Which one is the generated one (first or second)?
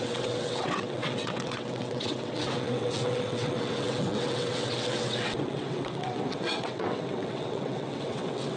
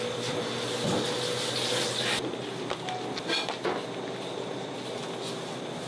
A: first